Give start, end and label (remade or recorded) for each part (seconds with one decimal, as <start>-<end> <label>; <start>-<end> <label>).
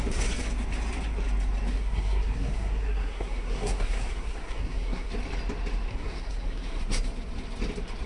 0.0-1.7 recorded; 1.7-5.1 remade; 5.1-5.9 recorded; 5.9-6.8 remade; 6.8-8.1 recorded